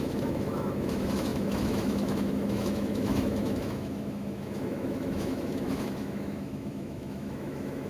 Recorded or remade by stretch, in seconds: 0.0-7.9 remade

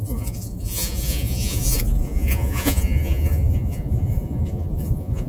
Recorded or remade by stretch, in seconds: 0.0-5.3 remade

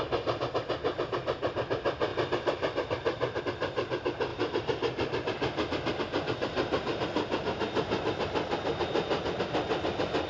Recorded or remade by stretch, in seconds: 0.0-2.1 recorded; 2.1-3.4 remade; 3.4-4.3 recorded; 4.3-6.0 remade; 6.0-10.3 recorded